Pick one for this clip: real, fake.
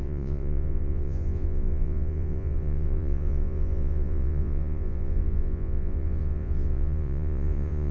fake